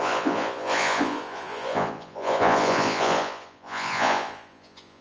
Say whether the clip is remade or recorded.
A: remade